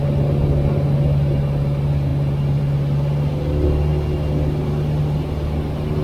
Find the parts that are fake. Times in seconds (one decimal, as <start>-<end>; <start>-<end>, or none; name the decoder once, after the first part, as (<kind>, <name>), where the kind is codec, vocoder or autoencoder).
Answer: none